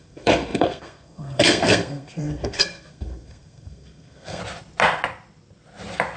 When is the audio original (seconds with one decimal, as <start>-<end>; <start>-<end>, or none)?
4.4-6.2